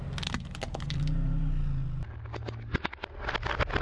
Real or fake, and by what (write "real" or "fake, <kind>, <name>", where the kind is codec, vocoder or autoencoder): real